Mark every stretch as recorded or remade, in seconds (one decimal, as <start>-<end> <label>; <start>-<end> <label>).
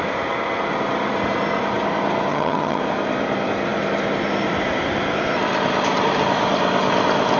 0.0-2.3 recorded; 2.3-2.8 remade; 2.8-7.4 recorded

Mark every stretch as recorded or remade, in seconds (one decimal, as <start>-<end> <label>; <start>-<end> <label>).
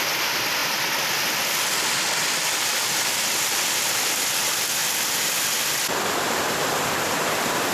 0.0-0.6 recorded; 0.6-1.7 remade; 1.7-4.8 recorded; 4.8-6.0 remade; 6.0-7.7 recorded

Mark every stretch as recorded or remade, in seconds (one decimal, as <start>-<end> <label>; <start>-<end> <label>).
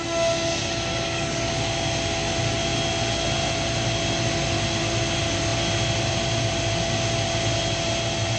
0.0-0.9 recorded; 0.9-1.5 remade; 1.5-8.4 recorded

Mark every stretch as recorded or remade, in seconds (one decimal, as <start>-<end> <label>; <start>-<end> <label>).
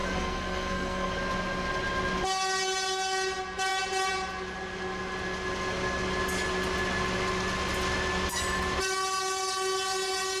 0.0-1.1 remade; 1.1-10.4 recorded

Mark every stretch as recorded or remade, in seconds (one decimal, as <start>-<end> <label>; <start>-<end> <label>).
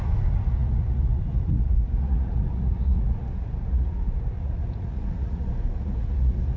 0.0-6.6 remade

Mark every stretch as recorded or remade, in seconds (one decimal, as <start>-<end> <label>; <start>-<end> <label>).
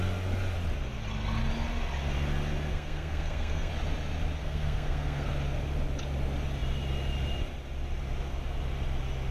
0.0-2.7 recorded; 2.7-3.7 remade; 3.7-4.4 recorded; 4.4-5.3 remade; 5.3-9.3 recorded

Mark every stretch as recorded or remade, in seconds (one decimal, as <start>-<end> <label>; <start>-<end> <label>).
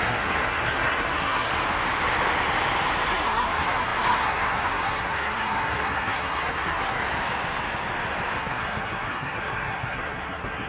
0.0-1.5 remade; 1.5-3.1 recorded; 3.1-7.0 remade; 7.0-8.4 recorded; 8.4-10.7 remade